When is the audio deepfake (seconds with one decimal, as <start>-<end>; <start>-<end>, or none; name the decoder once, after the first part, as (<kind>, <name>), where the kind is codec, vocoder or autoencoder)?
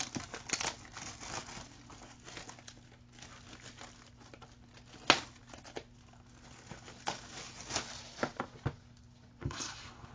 9.4-10.1 (codec, DAC)